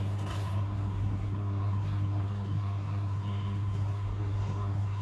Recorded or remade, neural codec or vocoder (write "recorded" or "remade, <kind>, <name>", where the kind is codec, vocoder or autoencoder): remade, codec, SNAC